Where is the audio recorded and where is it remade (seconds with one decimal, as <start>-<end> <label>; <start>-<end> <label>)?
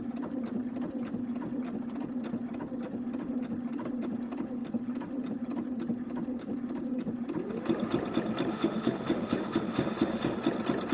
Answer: 0.0-8.5 recorded; 8.5-10.4 remade; 10.4-10.9 recorded